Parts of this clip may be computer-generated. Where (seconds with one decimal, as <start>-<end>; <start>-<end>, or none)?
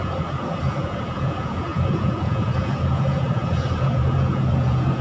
0.0-5.0